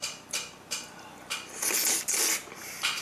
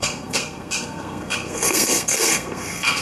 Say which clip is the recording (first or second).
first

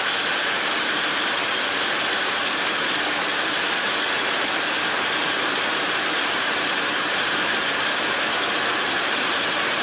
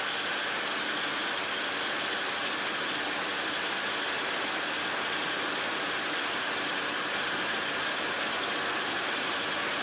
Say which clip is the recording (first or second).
second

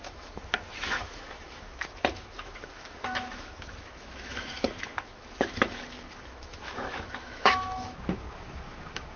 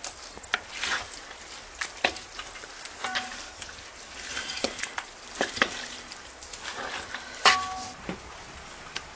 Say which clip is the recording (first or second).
second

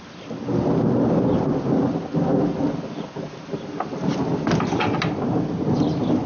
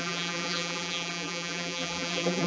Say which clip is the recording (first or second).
first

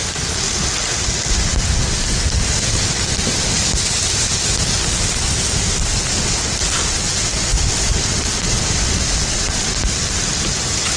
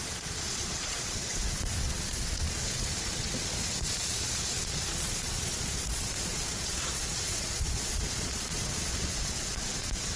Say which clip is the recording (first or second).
first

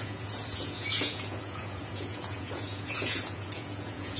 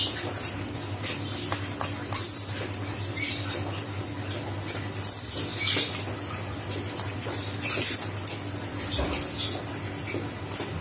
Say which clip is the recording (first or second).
second